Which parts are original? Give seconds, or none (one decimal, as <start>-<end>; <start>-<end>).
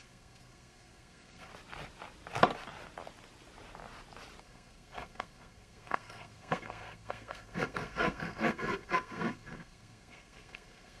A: 1.5-4.4